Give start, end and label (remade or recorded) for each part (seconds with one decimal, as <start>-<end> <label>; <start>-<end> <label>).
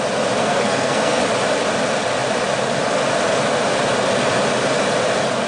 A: 0.0-0.4 recorded; 0.4-1.2 remade; 1.2-5.5 recorded